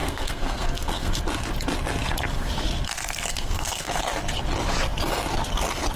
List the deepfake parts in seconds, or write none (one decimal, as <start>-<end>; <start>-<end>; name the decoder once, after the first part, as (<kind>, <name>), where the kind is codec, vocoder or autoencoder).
0.0-1.2 (codec, SNAC); 3.3-4.0